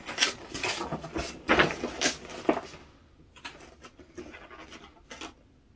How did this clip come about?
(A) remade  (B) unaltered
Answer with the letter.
B